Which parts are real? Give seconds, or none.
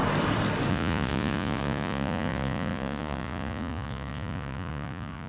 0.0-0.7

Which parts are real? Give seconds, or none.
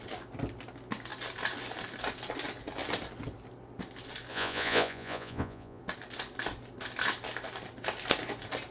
0.0-4.3; 5.8-8.7